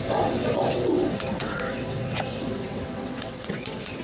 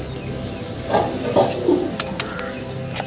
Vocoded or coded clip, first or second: first